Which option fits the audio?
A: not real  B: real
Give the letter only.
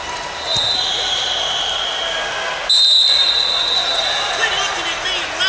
B